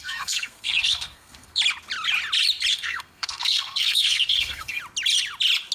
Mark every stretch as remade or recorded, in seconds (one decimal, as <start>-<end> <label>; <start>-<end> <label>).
0.0-1.6 remade; 1.6-2.7 recorded; 2.7-4.8 remade; 4.8-5.7 recorded